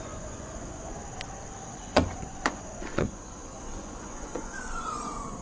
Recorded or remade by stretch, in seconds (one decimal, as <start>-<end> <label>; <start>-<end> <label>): 0.0-1.0 remade; 1.0-1.7 recorded; 1.7-5.4 remade